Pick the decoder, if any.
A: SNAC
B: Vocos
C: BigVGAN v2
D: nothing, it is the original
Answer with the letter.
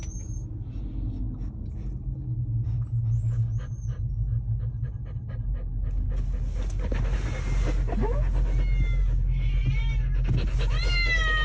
D